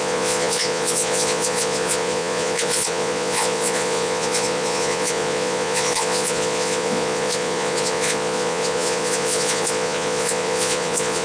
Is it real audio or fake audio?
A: fake